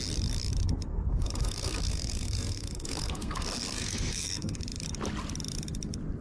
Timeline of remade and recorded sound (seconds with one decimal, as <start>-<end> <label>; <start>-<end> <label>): 0.0-0.9 recorded; 0.9-4.6 remade; 4.6-6.2 recorded